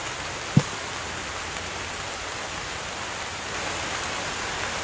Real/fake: real